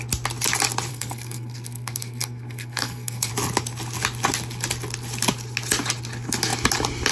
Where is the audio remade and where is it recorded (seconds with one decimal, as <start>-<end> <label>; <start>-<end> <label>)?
0.0-0.9 recorded; 0.9-3.3 remade; 3.3-7.1 recorded